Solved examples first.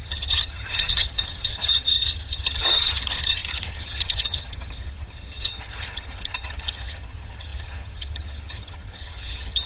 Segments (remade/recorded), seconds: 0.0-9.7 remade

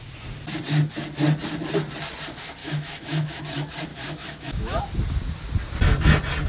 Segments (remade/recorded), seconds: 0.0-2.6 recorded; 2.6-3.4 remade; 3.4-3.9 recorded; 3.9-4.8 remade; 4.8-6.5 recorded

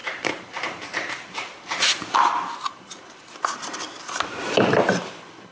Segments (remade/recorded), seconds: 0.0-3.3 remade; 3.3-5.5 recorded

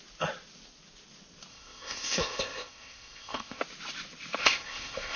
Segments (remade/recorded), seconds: 0.0-1.5 recorded; 1.5-3.6 remade; 3.6-4.4 recorded; 4.4-5.2 remade